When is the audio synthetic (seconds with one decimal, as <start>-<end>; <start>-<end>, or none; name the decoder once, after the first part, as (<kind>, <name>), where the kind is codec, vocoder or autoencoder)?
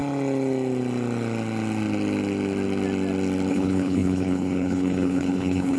3.5-5.8 (codec, HILCodec)